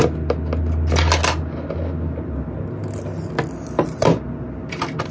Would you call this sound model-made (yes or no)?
no